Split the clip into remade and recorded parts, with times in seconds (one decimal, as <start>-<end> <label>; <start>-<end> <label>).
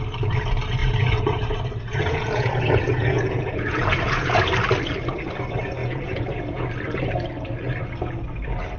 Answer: 0.0-0.8 recorded; 0.8-4.4 remade; 4.4-5.8 recorded; 5.8-6.6 remade; 6.6-8.8 recorded